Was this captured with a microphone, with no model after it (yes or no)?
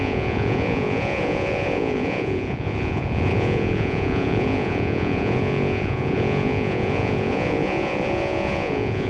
no